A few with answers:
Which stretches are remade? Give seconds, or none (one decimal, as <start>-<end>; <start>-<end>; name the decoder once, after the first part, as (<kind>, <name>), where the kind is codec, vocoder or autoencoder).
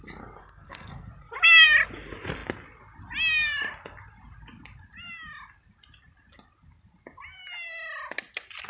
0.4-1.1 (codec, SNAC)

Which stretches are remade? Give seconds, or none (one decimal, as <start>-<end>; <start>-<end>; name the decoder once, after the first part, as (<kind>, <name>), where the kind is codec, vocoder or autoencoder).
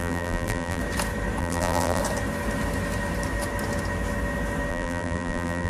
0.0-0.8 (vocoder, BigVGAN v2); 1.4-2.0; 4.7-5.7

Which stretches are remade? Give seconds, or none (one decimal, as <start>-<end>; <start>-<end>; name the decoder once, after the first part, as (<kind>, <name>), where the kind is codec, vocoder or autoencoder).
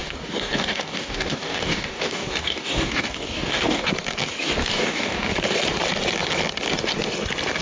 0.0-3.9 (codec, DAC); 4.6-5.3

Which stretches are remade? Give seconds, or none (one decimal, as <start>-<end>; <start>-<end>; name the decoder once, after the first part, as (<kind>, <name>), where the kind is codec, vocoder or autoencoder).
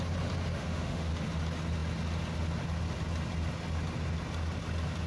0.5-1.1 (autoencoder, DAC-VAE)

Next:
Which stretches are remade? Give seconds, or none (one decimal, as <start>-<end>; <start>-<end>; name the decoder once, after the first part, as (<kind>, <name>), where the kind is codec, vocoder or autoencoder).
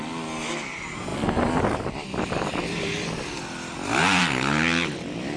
none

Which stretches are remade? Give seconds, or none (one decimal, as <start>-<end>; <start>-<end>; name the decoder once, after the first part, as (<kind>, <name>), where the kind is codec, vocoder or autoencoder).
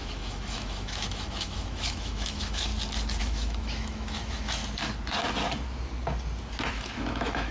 0.0-2.7 (autoencoder, DAC-VAE); 3.2-4.6; 6.7-7.5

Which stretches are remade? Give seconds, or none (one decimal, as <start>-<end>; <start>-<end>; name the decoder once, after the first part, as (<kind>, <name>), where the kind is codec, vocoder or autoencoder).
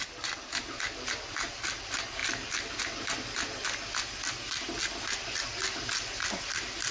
none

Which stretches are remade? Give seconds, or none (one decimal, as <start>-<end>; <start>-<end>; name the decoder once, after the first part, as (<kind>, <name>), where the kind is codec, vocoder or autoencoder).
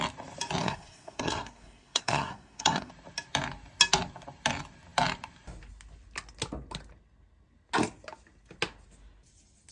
0.6-2.9 (codec, SNAC)